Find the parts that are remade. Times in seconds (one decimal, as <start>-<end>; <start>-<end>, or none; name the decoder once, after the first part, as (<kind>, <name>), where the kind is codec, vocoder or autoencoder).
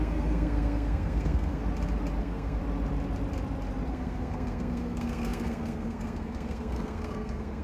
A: 0.0-1.6 (codec, SNAC); 2.2-2.6; 3.9-7.6